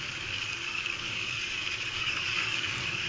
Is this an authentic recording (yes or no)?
no